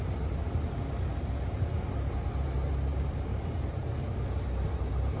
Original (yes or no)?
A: yes